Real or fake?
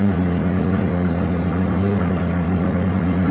fake